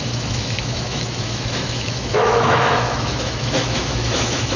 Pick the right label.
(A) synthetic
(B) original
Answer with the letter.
A